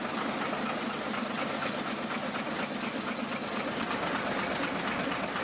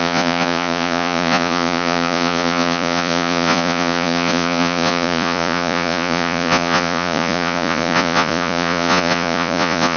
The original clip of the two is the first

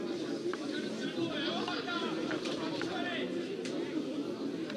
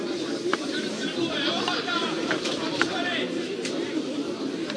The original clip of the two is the first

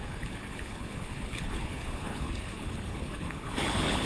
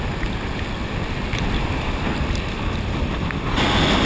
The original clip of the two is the second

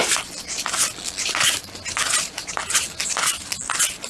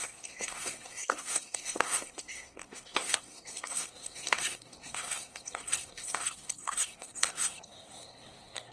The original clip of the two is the first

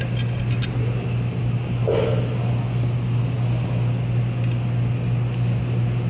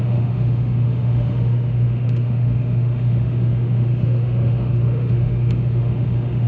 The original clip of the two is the first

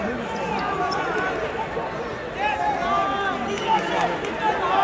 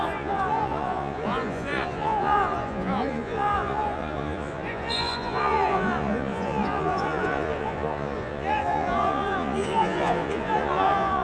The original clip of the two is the first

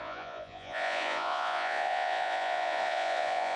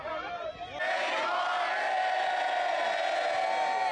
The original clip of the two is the second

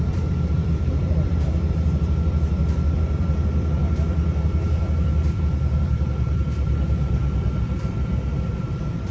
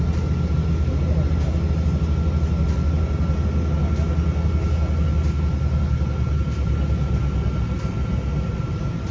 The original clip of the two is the second